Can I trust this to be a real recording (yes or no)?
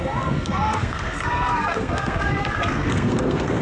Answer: no